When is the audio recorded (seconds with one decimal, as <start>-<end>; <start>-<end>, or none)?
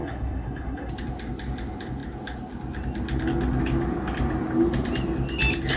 0.9-5.8